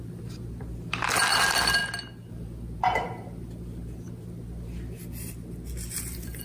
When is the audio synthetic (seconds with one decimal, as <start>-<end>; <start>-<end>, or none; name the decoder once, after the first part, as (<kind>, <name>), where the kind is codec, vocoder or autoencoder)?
none